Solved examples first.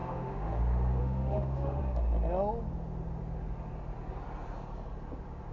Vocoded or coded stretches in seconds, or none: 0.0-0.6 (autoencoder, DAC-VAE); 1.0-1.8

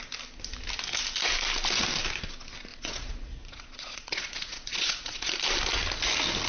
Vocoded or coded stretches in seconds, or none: 2.7-5.3 (vocoder, Vocos)

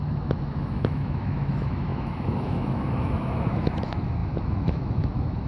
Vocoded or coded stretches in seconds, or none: 0.0-5.5 (autoencoder, DAC-VAE)

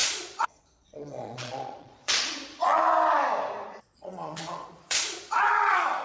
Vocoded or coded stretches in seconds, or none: 0.0-2.8 (vocoder, Vocos); 3.7-6.0